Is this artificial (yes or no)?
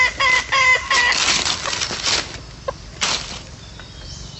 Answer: no